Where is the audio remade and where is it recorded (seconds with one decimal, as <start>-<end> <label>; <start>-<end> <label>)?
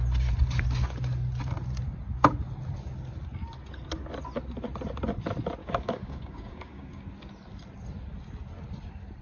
0.0-5.6 recorded; 5.6-7.0 remade; 7.0-9.2 recorded